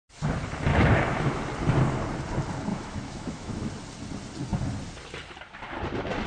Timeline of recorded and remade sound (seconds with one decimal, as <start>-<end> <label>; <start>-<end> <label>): 0.0-0.7 recorded; 0.7-1.4 remade; 1.4-2.7 recorded; 2.7-3.7 remade; 3.7-6.3 recorded